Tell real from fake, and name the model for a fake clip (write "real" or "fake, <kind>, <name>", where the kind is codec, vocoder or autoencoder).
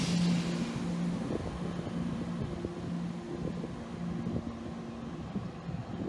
real